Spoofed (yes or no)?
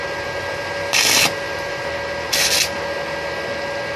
no